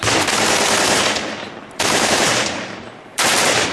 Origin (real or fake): fake